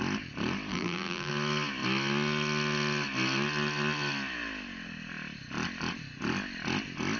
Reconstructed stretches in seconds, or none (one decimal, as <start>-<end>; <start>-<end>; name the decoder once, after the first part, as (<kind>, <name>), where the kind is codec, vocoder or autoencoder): 0.7-1.3 (vocoder, BigVGAN v2)